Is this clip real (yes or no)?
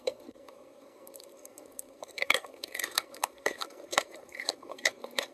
no